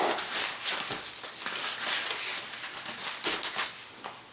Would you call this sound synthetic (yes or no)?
no